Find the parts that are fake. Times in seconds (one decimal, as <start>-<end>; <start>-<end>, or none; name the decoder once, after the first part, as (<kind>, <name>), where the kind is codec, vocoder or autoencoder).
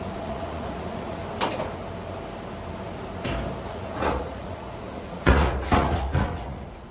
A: 0.0-1.2 (vocoder, Vocos); 3.7-6.9